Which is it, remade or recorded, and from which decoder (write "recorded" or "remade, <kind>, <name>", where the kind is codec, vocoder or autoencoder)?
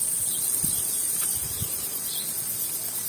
recorded